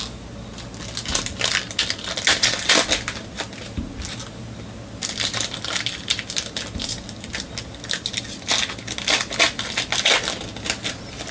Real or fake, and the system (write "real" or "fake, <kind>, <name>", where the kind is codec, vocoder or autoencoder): real